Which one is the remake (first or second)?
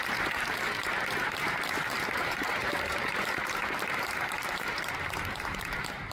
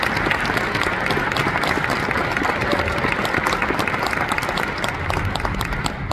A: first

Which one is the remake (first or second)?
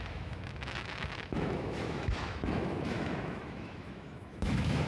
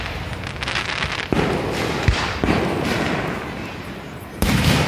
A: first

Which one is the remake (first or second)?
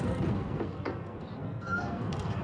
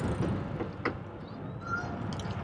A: first